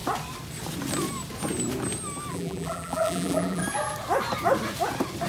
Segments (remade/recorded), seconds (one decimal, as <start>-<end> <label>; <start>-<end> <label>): 0.0-2.3 recorded; 2.3-3.6 remade; 3.6-5.3 recorded